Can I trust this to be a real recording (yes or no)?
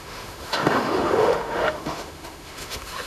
no